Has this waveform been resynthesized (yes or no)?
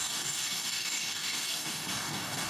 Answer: yes